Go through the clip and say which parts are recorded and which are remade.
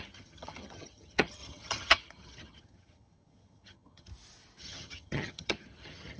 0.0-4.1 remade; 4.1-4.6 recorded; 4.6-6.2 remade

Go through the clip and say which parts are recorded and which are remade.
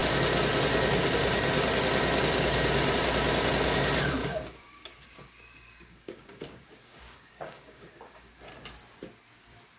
0.0-4.2 recorded; 4.2-8.3 remade; 8.3-9.8 recorded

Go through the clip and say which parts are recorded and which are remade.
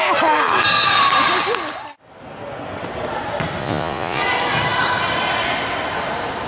0.0-3.6 recorded; 3.6-4.2 remade; 4.2-6.5 recorded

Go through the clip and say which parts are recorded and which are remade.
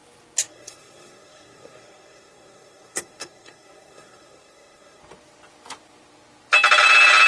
0.0-0.5 recorded; 0.5-5.0 remade; 5.0-7.3 recorded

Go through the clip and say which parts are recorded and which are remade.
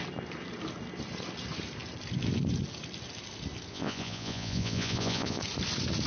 0.0-3.7 recorded; 3.7-5.4 remade; 5.4-6.1 recorded